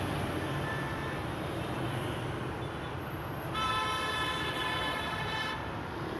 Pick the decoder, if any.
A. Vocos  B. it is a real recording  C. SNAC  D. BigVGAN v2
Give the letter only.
B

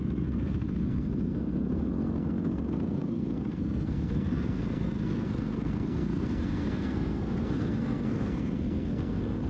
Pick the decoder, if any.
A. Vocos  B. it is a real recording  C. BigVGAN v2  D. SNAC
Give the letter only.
D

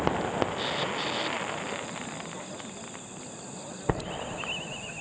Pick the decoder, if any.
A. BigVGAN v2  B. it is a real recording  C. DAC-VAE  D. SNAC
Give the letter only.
B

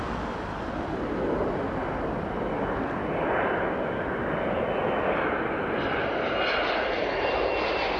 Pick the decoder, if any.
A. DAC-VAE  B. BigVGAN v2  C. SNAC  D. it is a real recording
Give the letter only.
D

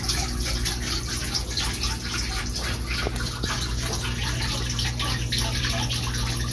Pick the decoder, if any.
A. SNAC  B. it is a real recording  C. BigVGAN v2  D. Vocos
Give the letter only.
B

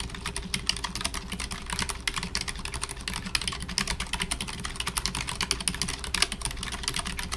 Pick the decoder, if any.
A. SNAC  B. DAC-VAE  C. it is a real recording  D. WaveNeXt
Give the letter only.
C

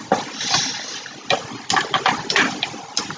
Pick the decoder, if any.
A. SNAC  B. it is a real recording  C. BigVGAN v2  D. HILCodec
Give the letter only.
B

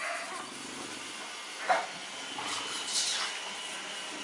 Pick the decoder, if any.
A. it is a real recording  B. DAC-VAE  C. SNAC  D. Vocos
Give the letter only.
A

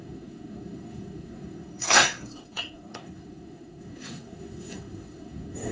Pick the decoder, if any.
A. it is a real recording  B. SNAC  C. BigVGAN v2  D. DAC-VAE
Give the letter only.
B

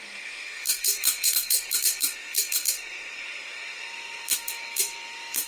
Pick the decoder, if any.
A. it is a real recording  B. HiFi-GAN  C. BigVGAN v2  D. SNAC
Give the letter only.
D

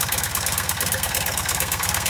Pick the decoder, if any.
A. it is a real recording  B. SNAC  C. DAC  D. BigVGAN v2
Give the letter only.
B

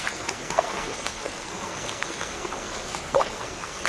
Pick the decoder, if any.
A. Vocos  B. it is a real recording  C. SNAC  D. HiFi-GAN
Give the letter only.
C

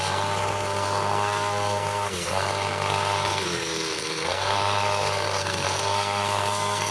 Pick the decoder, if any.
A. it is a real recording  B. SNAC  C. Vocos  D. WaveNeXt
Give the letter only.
B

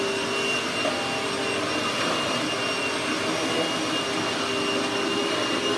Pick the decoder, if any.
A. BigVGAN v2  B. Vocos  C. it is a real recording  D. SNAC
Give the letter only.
C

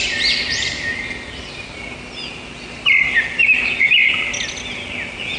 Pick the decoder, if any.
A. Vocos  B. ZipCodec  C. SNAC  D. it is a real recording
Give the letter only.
D